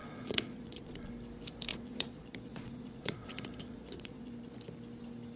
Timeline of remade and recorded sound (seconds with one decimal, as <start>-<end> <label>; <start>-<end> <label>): 0.0-1.1 remade; 1.1-1.7 recorded; 1.7-4.3 remade; 4.3-5.4 recorded